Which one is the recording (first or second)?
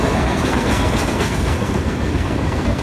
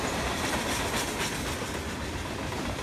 second